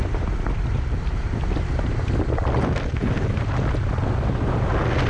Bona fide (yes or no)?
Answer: yes